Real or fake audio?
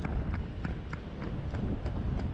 real